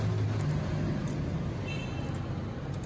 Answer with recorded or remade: recorded